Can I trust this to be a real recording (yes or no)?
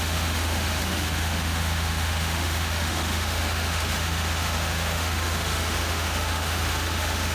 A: no